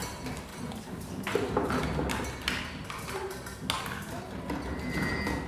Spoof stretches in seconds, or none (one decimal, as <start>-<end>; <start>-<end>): none